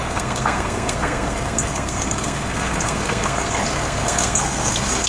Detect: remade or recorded remade